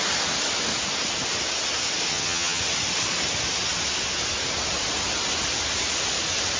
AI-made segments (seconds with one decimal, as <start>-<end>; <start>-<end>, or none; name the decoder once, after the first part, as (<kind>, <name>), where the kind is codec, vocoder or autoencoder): 2.1-2.6 (vocoder, HiFi-GAN)